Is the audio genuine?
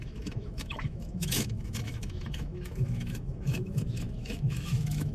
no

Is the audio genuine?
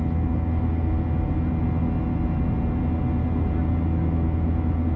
yes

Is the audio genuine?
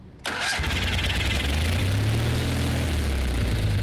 yes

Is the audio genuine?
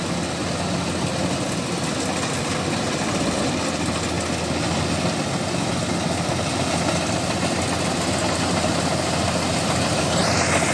yes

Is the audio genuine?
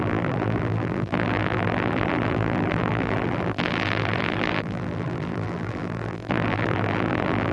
no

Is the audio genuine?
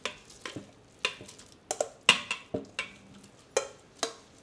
yes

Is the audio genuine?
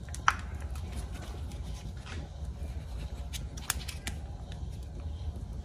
yes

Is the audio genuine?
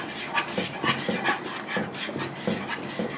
yes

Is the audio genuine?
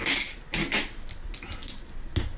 yes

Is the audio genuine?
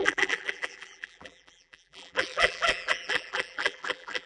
no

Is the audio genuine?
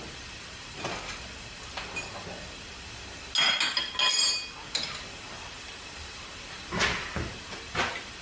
yes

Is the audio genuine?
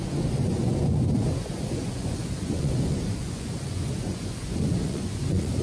no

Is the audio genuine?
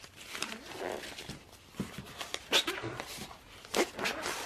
yes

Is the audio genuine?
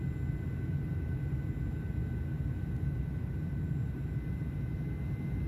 yes